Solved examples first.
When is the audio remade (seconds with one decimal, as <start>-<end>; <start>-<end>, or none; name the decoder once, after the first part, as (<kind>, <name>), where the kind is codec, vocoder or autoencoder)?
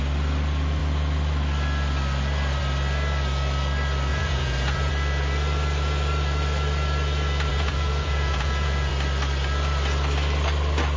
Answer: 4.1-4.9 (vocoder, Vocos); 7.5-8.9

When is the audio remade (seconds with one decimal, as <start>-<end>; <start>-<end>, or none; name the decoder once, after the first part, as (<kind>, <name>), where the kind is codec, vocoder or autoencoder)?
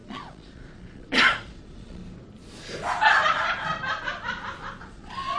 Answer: 0.0-2.0 (vocoder, Vocos); 4.8-5.4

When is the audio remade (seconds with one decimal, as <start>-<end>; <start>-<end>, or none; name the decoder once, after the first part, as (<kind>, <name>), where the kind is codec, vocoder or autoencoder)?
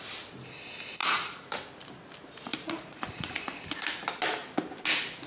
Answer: 1.0-1.6 (vocoder, Vocos); 2.5-3.6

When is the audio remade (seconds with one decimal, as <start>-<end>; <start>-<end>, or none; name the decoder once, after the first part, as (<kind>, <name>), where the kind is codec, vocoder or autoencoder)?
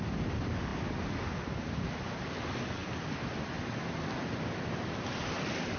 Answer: none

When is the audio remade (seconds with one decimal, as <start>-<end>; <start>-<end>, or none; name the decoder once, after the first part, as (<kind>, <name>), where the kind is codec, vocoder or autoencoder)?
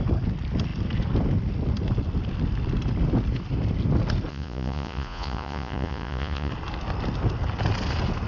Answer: 4.3-6.5 (vocoder, Vocos)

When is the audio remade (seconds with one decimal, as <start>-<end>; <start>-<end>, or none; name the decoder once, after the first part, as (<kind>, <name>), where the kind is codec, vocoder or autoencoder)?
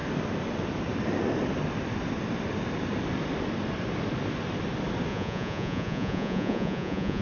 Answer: 5.1-7.2 (vocoder, Vocos)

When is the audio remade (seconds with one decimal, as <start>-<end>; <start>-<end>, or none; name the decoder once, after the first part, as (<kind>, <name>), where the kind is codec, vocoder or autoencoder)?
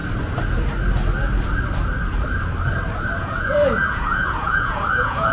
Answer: 3.2-5.3 (vocoder, Vocos)